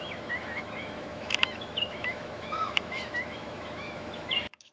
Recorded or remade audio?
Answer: remade